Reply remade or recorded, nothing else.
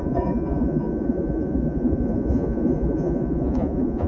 remade